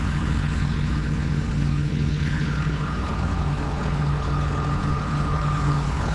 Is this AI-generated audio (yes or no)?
yes